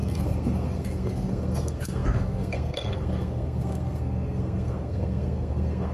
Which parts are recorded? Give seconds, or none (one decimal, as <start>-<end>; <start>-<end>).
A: none